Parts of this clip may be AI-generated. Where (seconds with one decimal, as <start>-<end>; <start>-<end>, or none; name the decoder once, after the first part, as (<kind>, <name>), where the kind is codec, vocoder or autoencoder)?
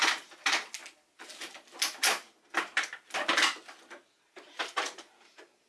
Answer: 0.0-0.8 (vocoder, BigVGAN v2); 4.2-5.7